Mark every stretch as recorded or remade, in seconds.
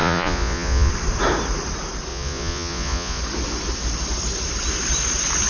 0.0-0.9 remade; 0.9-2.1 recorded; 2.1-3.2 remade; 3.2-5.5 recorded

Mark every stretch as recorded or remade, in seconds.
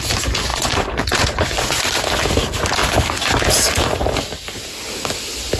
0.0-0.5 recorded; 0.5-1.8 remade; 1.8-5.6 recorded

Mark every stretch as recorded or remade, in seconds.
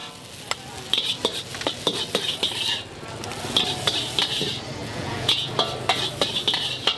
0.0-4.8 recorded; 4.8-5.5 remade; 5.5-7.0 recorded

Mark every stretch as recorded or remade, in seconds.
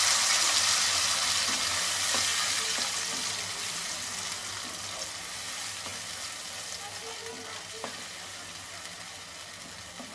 0.0-10.1 recorded